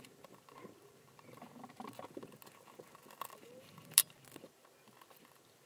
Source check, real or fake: real